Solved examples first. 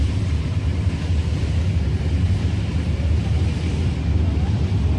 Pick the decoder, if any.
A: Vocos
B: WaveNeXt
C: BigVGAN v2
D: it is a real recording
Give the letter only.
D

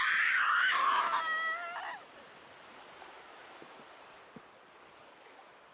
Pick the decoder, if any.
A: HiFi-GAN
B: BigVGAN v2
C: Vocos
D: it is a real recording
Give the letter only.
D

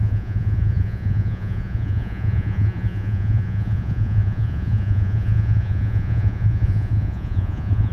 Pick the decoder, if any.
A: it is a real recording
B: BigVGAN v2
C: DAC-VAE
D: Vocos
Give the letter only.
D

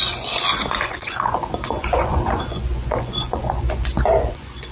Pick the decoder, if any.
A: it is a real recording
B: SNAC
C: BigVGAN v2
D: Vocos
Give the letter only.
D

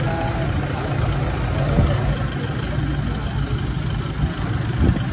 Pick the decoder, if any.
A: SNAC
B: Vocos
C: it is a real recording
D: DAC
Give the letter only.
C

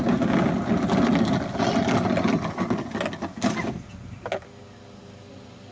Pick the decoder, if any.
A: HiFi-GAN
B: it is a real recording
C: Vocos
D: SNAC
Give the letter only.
B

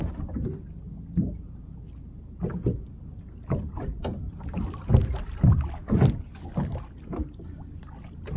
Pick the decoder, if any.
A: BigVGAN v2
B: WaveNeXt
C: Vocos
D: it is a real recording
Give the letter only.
D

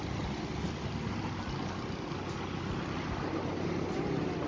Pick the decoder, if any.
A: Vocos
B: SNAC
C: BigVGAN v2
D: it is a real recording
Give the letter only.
D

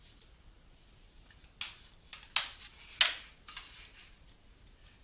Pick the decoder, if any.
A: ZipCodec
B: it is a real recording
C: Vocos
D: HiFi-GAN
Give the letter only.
B